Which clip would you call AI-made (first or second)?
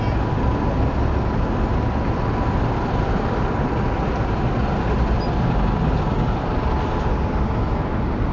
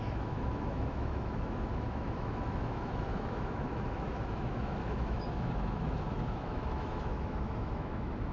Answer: second